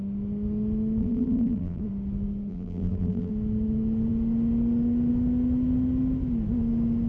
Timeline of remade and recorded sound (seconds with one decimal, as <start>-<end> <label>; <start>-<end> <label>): 0.0-1.0 recorded; 1.0-1.8 remade; 1.8-2.5 recorded; 2.5-3.3 remade; 3.3-7.1 recorded